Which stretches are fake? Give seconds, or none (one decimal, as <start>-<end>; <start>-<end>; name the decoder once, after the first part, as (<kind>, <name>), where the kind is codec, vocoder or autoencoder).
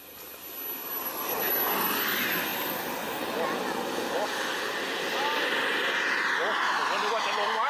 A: 2.5-4.1 (vocoder, BigVGAN v2)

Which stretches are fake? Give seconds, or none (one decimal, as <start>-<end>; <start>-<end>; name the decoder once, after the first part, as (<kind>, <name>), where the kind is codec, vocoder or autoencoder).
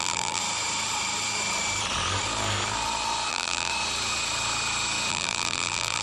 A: 0.0-0.4 (vocoder, BigVGAN v2); 3.3-3.7; 5.1-6.0